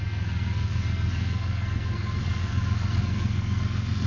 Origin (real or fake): fake